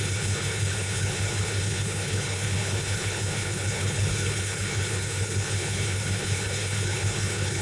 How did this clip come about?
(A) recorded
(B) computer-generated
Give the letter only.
B